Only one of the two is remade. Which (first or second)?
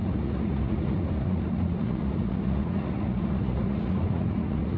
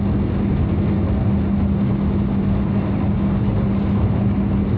first